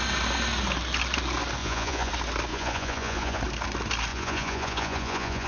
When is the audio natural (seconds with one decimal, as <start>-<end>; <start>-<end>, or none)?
0.0-1.6; 2.1-2.5; 3.4-4.1